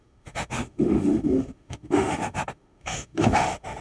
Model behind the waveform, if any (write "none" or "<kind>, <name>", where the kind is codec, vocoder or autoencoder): autoencoder, DAC-VAE